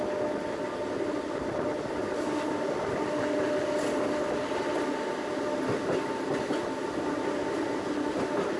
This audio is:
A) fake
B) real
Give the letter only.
B